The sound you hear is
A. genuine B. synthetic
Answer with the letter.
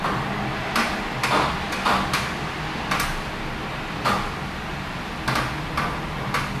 A